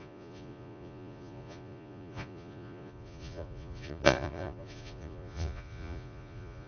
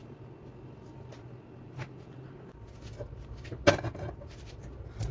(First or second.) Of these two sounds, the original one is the second